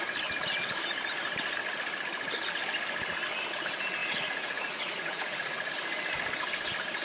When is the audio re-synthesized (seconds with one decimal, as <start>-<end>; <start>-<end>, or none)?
4.0-5.7